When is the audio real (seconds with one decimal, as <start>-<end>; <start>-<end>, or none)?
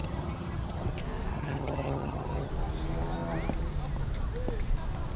0.9-1.3; 2.5-5.2